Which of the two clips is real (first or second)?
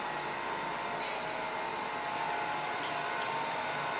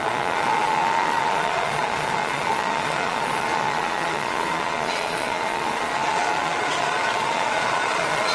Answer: first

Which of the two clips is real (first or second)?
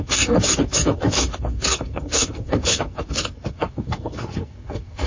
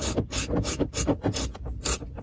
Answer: second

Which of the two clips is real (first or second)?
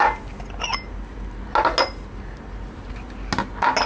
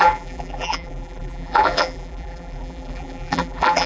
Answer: first